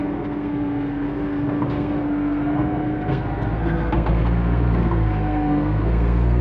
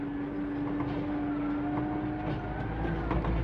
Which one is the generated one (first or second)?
first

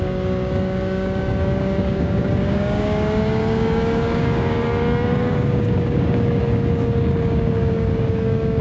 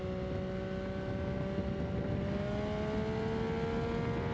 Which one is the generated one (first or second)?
first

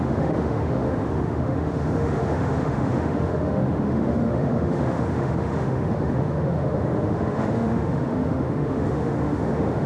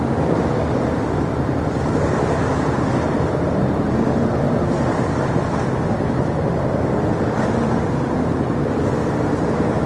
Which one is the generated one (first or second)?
first